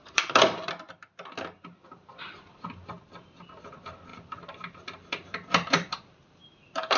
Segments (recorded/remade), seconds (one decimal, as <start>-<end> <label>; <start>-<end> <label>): 0.0-0.7 remade; 0.7-4.1 recorded; 4.1-7.0 remade